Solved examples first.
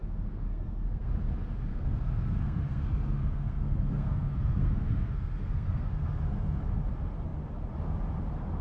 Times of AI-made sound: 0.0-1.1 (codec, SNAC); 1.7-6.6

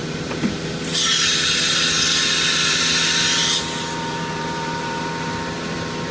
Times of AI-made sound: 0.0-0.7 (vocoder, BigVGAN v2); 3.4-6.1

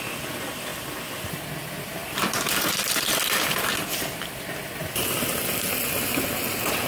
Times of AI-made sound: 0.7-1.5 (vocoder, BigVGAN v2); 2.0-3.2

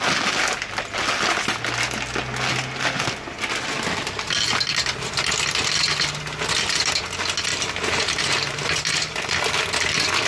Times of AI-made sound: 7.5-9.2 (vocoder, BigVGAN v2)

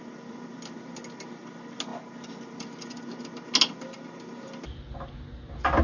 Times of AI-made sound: none